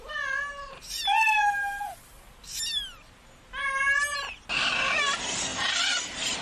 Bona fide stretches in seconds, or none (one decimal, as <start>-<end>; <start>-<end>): 0.0-5.5